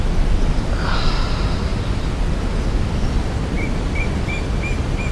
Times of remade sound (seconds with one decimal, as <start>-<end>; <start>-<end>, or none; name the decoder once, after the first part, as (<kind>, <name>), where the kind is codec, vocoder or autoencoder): none